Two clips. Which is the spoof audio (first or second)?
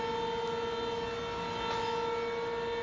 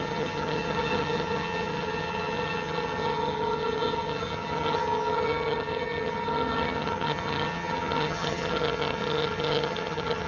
second